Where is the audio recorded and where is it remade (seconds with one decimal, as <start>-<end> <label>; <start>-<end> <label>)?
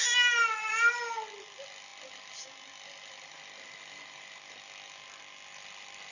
0.0-6.1 recorded